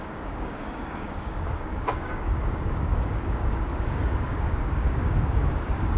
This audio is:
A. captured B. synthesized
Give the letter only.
B